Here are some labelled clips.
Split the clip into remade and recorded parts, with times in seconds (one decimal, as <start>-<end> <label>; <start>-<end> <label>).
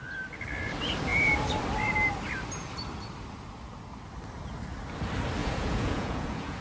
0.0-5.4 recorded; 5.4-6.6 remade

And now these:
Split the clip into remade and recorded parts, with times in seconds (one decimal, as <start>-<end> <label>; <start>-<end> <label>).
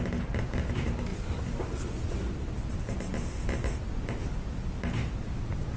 0.0-5.8 recorded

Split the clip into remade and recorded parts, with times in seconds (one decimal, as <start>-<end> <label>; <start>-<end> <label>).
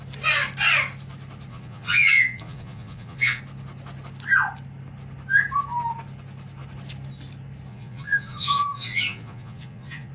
0.0-1.5 recorded; 1.5-3.4 remade; 3.4-7.7 recorded; 7.7-10.1 remade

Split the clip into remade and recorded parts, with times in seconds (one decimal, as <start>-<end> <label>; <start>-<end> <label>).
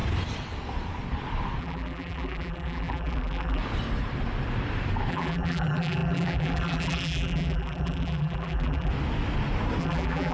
0.0-1.6 recorded; 1.6-3.6 remade; 3.6-5.1 recorded; 5.1-8.9 remade; 8.9-9.8 recorded; 9.8-10.3 remade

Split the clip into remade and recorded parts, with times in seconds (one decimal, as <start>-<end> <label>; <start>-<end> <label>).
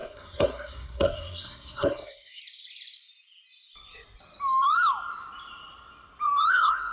0.0-2.4 remade; 2.4-6.5 recorded; 6.5-6.9 remade